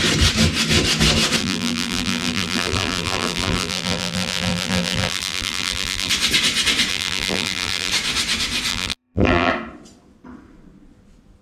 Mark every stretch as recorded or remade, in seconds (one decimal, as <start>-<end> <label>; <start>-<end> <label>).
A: 0.0-1.4 recorded; 1.4-6.1 remade; 6.1-6.9 recorded; 6.9-7.9 remade; 7.9-8.7 recorded; 8.7-9.5 remade; 9.5-11.4 recorded